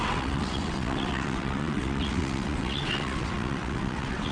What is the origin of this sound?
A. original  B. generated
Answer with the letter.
B